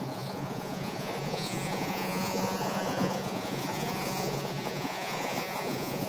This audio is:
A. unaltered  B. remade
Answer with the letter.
B